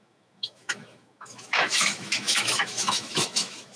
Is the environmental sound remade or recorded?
remade